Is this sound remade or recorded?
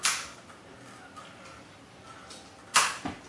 recorded